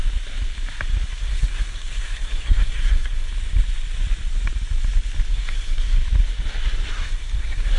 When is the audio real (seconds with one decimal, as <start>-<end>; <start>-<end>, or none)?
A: 0.0-1.1; 3.3-5.3; 6.0-6.9